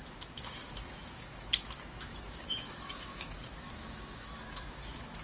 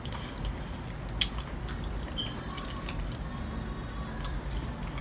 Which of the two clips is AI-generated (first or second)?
first